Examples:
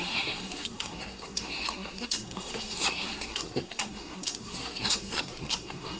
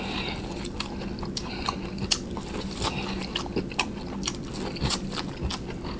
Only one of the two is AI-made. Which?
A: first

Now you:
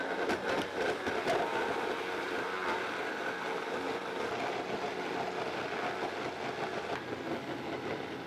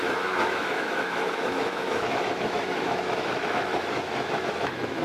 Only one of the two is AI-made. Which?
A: second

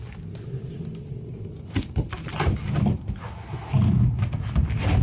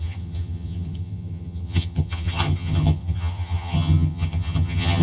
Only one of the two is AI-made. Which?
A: second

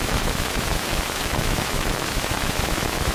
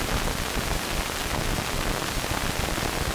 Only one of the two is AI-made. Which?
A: first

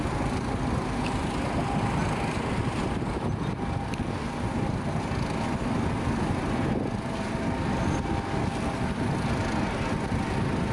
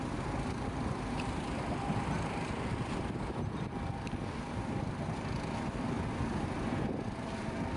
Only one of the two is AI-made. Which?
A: second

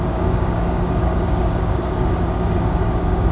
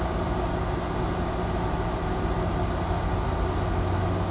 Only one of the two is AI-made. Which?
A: first